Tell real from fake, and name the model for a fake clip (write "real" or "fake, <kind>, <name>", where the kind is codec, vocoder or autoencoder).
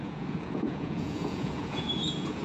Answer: fake, vocoder, Vocos